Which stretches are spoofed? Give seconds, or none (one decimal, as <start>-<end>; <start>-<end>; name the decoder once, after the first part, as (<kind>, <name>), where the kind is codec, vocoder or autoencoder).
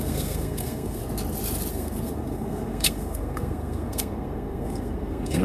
0.0-1.0 (codec, SNAC); 1.7-5.4